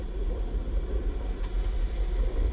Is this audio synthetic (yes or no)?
no